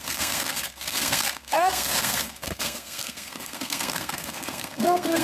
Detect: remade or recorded remade